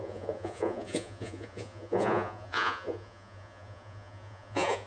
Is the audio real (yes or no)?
no